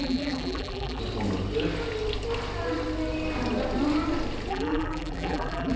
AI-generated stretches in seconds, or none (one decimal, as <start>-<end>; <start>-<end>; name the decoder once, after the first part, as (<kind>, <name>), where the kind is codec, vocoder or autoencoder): 0.0-1.0 (vocoder, BigVGAN v2); 4.5-5.8